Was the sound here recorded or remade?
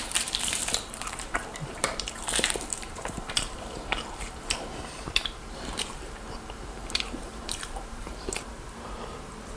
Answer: remade